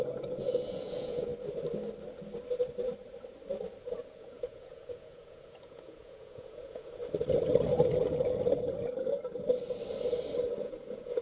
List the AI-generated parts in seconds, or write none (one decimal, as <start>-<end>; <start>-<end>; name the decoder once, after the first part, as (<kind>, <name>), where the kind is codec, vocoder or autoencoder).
0.0-1.3 (vocoder, Vocos); 3.8-7.0; 10.6-11.2